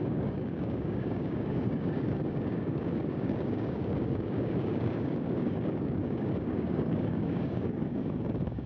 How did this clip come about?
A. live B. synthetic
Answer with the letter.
B